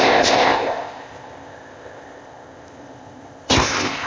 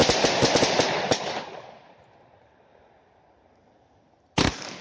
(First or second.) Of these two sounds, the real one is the second